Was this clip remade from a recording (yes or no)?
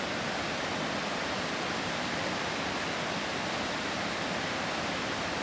no